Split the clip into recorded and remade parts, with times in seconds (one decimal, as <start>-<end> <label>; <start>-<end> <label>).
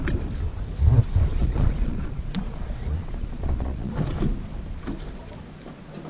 0.0-1.4 recorded; 1.4-3.9 remade; 3.9-6.1 recorded